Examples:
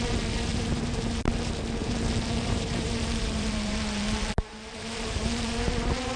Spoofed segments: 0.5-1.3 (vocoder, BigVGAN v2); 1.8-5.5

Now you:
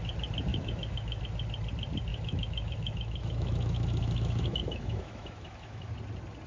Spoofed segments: 0.5-1.2 (autoencoder, DAC-VAE); 2.1-5.9